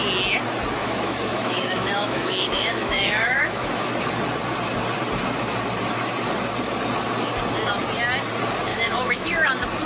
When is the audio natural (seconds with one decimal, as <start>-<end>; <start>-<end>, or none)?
0.0-0.8; 3.9-8.7; 9.5-9.9